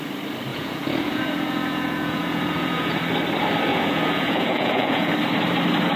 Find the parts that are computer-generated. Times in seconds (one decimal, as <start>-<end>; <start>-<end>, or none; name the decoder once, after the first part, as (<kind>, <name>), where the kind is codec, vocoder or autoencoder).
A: 0.5-3.0 (vocoder, Vocos); 3.7-5.1

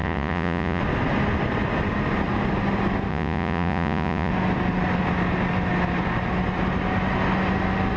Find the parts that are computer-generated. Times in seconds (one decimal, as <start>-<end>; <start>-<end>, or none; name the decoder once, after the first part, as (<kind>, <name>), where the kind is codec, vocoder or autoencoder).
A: 0.0-0.8 (vocoder, Vocos); 3.1-4.3

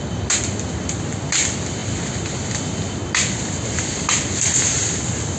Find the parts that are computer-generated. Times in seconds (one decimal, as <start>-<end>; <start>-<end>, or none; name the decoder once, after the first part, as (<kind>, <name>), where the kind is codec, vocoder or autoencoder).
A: none

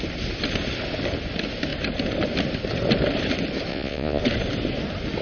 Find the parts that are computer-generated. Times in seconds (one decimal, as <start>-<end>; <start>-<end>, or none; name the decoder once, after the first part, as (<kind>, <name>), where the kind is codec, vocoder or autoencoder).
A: 3.7-4.2 (vocoder, Vocos)

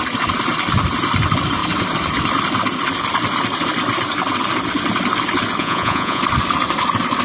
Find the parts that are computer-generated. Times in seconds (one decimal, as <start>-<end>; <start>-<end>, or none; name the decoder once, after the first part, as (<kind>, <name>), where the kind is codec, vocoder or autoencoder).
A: 5.6-6.2 (vocoder, Vocos)